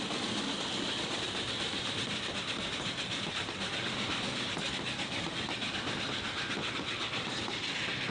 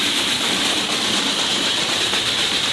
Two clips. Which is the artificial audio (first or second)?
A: second